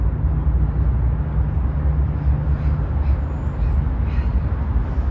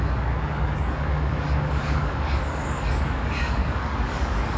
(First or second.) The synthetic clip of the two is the second